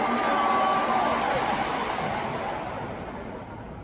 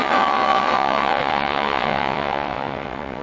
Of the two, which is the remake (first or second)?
second